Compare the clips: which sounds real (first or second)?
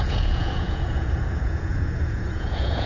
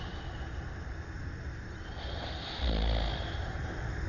second